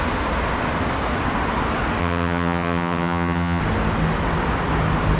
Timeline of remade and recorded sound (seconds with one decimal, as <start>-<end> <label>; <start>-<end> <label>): 0.0-2.0 recorded; 2.0-3.6 remade; 3.6-5.2 recorded